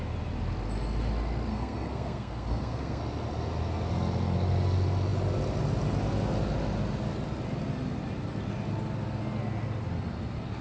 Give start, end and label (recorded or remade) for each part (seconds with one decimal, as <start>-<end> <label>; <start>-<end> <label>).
0.0-1.5 recorded; 1.5-3.0 remade; 3.0-10.6 recorded